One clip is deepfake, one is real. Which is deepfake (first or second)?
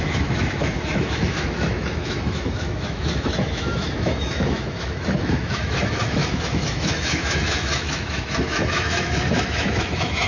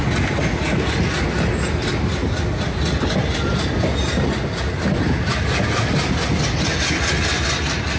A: first